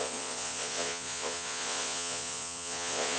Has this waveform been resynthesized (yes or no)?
yes